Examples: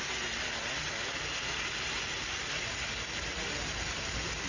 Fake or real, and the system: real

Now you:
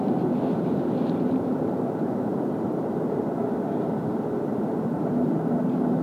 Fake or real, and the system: fake, vocoder, BigVGAN v2